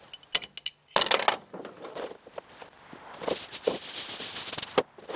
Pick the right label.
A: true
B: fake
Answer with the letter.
A